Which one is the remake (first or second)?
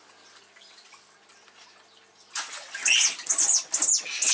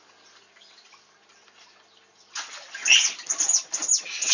second